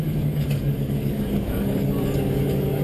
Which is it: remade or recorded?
remade